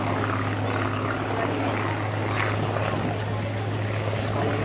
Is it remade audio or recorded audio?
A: recorded